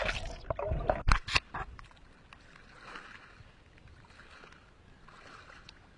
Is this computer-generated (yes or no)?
no